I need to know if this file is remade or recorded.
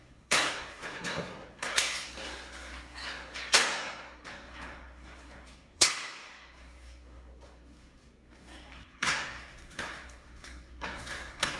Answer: remade